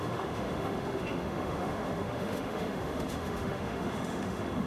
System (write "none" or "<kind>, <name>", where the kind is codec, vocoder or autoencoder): autoencoder, DAC-VAE